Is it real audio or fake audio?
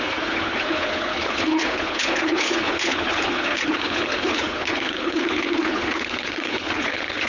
fake